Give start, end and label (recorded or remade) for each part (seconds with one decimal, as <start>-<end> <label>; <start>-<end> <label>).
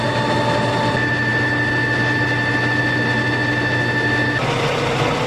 0.0-5.3 recorded